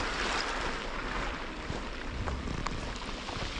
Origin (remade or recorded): recorded